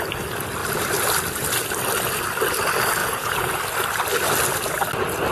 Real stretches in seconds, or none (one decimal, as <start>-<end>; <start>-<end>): 0.0-3.0; 3.6-5.3